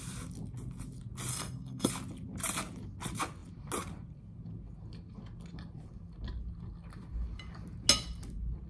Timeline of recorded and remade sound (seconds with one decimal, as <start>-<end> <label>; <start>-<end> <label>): 0.0-1.3 recorded; 1.3-1.9 remade; 1.9-8.7 recorded